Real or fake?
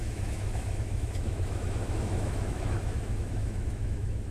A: fake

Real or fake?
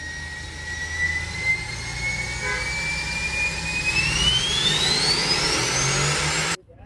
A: real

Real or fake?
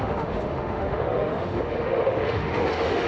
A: fake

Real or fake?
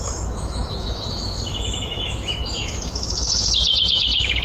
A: fake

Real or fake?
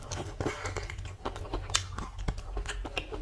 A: real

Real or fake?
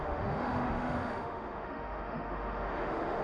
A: fake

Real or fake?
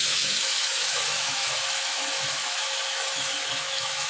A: fake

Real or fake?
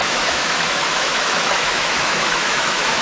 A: fake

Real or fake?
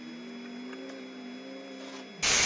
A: real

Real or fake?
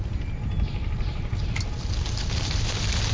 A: real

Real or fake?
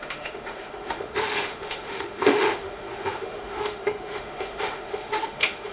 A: fake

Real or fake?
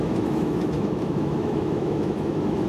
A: fake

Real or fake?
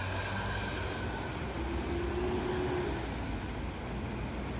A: real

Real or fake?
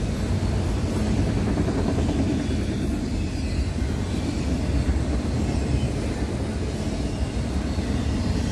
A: real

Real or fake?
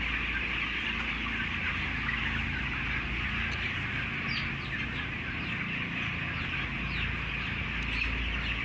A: real